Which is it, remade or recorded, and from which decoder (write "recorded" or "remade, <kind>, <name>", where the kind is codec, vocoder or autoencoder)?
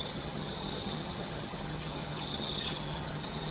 remade, vocoder, HiFi-GAN